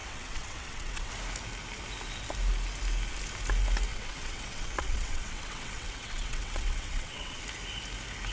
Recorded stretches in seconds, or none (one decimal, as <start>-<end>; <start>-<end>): 1.1-3.9; 7.4-8.3